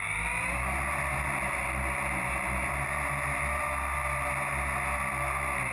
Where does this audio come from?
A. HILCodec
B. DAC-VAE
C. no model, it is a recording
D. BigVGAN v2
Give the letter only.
C